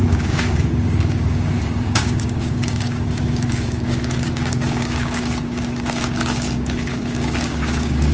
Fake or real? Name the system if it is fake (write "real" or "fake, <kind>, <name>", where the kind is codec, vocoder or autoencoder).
fake, codec, DAC